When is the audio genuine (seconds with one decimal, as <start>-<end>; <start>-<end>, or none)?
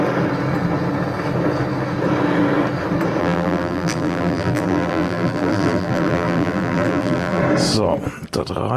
0.0-3.2; 7.4-8.8